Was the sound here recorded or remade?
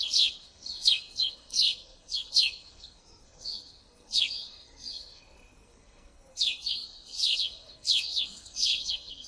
remade